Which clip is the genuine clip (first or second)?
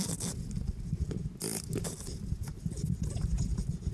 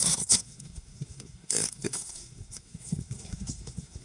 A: first